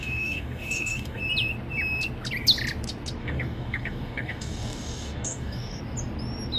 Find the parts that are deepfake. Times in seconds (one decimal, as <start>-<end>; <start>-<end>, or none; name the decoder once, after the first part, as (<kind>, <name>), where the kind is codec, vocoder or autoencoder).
0.0-1.2 (codec, DAC); 3.2-5.8